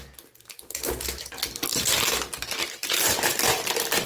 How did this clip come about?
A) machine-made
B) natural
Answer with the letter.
B